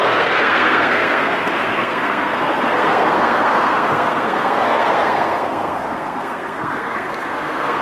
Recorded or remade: remade